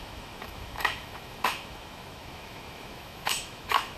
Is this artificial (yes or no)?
yes